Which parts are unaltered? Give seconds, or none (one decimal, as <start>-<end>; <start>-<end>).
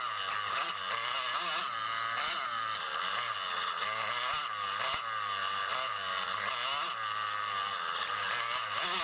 0.0-9.0